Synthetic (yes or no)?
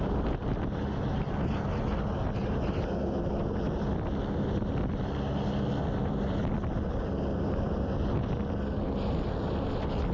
no